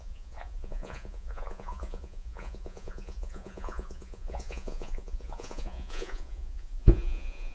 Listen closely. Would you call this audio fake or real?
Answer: fake